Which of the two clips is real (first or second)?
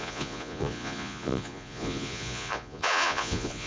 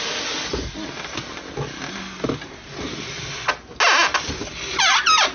second